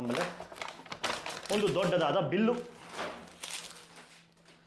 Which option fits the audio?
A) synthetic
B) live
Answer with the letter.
B